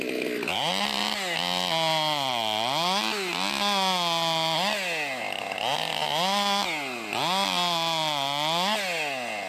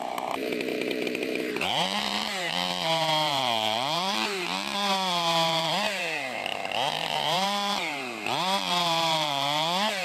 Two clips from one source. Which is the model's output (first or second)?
second